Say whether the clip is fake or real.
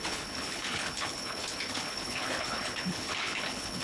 fake